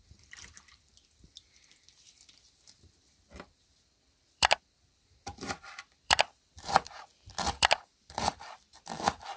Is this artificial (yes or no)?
yes